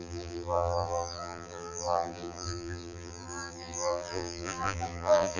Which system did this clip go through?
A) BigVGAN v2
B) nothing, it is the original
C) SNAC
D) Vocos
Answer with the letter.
A